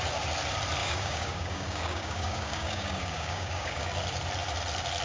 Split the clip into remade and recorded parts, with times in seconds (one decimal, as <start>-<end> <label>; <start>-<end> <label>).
0.0-0.8 recorded; 0.8-3.8 remade; 3.8-5.0 recorded